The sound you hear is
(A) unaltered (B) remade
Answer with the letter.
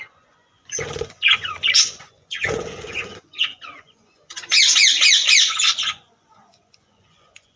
B